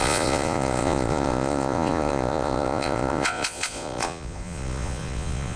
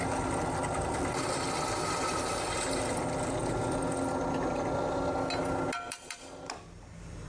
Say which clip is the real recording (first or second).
second